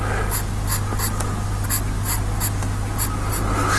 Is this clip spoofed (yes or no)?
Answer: no